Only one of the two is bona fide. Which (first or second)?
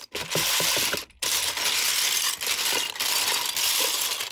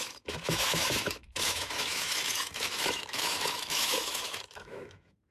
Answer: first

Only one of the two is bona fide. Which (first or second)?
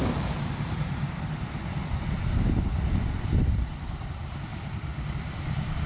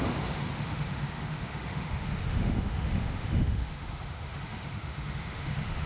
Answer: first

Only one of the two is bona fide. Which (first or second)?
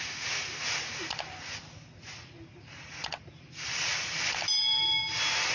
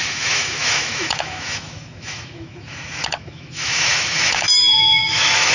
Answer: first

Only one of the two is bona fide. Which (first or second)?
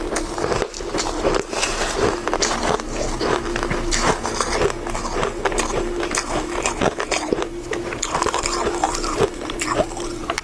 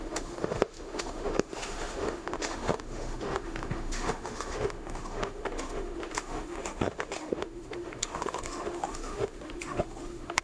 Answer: first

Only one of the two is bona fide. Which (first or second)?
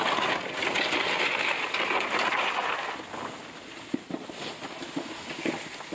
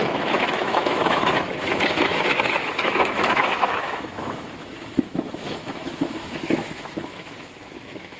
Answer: first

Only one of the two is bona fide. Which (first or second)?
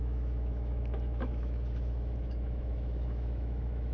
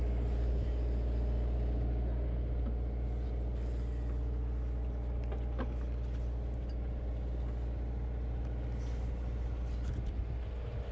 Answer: second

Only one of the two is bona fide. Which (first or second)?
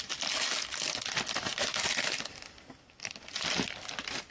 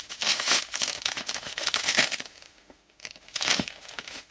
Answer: first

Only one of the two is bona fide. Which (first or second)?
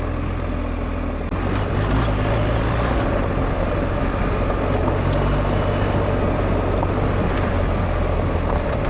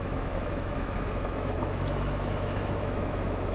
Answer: first